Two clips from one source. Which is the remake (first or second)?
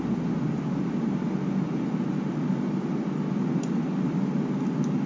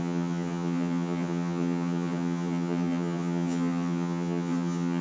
second